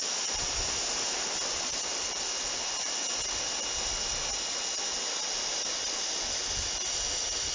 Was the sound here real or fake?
real